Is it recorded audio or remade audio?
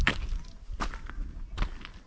recorded